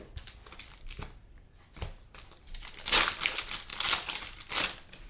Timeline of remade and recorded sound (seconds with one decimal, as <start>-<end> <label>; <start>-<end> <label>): 0.0-5.1 recorded